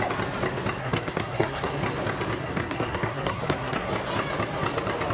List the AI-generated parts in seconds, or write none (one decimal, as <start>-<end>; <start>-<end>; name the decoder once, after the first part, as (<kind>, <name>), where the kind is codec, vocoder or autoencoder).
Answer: 0.8-1.8 (codec, SNAC); 2.4-3.9